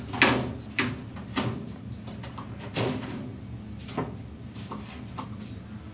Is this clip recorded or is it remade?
recorded